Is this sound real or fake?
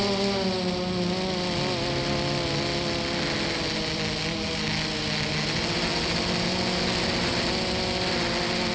real